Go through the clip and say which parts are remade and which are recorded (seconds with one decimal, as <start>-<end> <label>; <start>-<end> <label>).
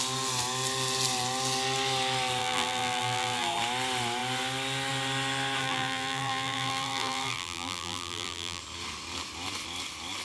0.0-2.4 recorded; 2.4-3.6 remade; 3.6-5.6 recorded; 5.6-8.6 remade; 8.6-10.2 recorded